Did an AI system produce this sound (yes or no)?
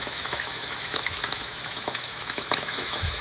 yes